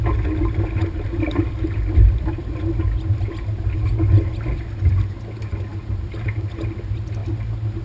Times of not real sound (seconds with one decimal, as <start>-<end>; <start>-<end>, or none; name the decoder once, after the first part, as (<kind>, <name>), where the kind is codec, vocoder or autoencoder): 0.8-2.6 (vocoder, BigVGAN v2)